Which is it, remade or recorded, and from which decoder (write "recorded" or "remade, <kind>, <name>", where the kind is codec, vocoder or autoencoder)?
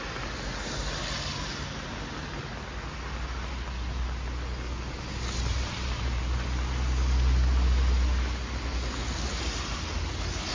recorded